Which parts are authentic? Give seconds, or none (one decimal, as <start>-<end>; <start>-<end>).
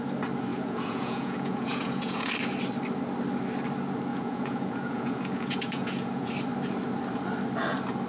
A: 0.0-0.5; 2.3-4.1; 6.3-8.1